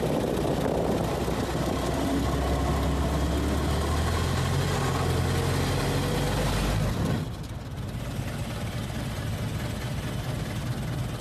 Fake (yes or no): no